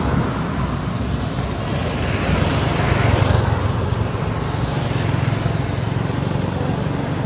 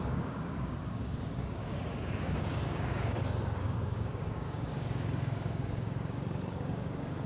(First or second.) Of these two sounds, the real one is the first